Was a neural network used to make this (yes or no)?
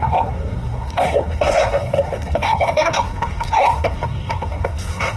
yes